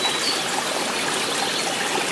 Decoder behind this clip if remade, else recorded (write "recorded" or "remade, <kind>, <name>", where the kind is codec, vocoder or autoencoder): recorded